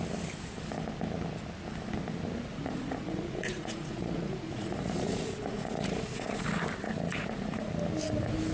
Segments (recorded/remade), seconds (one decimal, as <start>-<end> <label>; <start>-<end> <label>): 0.0-2.5 recorded; 2.5-6.6 remade; 6.6-7.1 recorded; 7.1-7.7 remade; 7.7-8.5 recorded